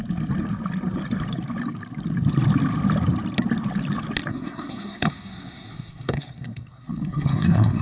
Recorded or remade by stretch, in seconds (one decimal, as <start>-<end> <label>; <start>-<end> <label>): 0.0-4.3 recorded; 4.3-7.8 remade